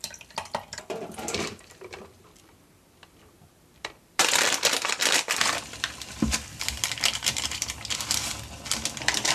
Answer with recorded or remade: remade